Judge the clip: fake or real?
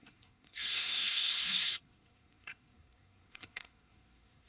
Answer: fake